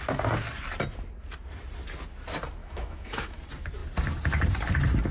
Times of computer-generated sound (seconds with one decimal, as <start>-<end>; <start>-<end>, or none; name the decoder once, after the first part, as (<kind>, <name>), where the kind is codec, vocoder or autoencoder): 2.6-3.4 (autoencoder, DAC-VAE)